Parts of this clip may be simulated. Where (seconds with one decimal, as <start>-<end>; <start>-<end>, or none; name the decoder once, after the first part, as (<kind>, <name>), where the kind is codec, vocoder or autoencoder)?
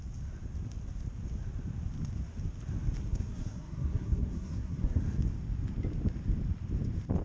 3.1-5.0 (codec, SNAC)